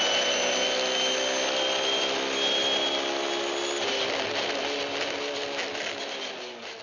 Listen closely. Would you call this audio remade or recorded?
recorded